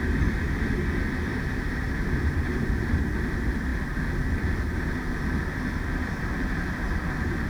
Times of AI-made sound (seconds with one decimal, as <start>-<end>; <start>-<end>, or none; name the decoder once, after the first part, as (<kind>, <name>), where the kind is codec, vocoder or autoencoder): 1.3-2.9 (vocoder, BigVGAN v2)